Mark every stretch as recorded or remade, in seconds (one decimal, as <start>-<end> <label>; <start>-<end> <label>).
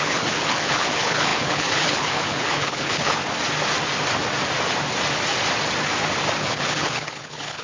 0.0-3.2 remade; 3.2-6.4 recorded; 6.4-7.6 remade